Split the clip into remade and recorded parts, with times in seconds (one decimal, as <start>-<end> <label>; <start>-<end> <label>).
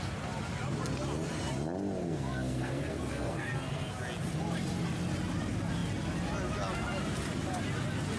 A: 0.0-2.0 recorded; 2.0-3.9 remade; 3.9-8.2 recorded